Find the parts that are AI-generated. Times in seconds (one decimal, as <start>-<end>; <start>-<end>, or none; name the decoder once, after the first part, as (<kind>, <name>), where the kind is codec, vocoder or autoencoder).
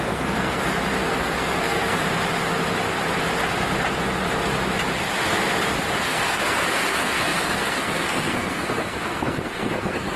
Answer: 0.0-0.6 (codec, SNAC); 1.1-2.0; 6.0-10.2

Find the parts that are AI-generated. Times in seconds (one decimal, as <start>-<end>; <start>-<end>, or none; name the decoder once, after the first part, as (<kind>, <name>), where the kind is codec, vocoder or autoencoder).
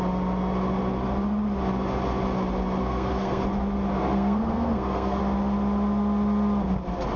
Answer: 2.8-3.4 (codec, SNAC); 4.0-5.2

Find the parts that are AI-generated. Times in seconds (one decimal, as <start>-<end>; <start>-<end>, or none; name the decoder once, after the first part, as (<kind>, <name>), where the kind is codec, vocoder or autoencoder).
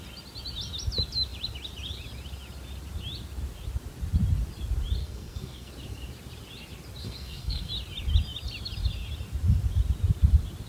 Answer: 5.0-5.7 (codec, SNAC); 7.0-7.7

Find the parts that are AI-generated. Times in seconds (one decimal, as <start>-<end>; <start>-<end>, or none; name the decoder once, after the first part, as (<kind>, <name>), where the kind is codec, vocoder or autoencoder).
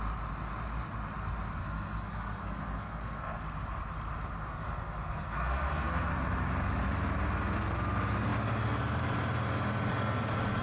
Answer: 1.6-3.4 (codec, SNAC); 4.5-6.1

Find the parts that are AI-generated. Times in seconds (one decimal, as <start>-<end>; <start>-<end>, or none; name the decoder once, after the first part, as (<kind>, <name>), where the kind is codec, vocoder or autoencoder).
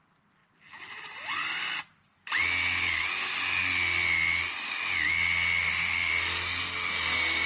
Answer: 5.6-6.1 (codec, SNAC)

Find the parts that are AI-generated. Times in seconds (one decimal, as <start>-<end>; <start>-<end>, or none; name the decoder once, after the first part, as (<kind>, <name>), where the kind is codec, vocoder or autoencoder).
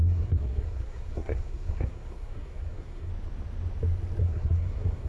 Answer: 0.0-3.1 (codec, SNAC); 4.2-5.1